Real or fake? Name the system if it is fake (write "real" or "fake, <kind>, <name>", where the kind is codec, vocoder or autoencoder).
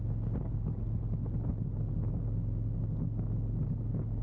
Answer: real